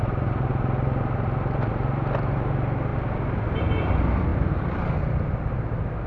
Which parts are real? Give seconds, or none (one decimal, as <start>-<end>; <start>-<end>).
0.0-6.1